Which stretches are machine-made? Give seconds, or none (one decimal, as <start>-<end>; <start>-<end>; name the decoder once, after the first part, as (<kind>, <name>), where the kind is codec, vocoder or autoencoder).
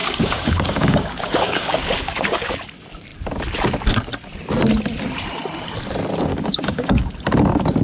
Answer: 0.0-2.6 (codec, DAC); 6.3-7.1